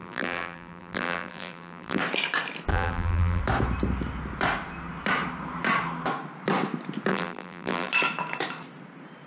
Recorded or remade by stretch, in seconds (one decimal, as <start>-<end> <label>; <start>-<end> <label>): 0.0-2.0 remade; 2.0-2.7 recorded; 2.7-3.4 remade; 3.4-7.1 recorded; 7.1-7.9 remade; 7.9-9.3 recorded